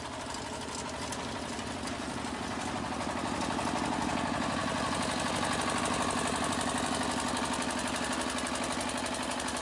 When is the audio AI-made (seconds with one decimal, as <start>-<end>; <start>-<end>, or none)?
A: none